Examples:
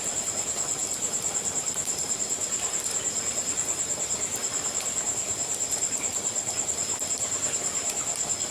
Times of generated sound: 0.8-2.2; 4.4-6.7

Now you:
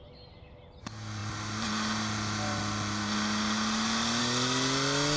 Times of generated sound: none

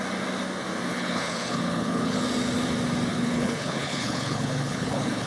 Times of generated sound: 0.9-2.2; 3.1-5.3

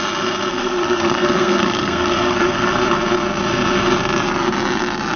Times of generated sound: 0.5-2.7

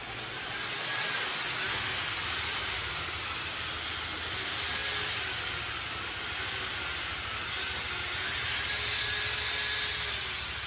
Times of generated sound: none

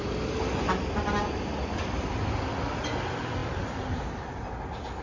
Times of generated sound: 3.4-4.5

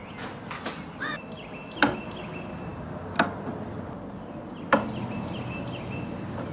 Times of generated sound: none